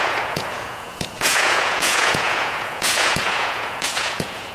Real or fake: fake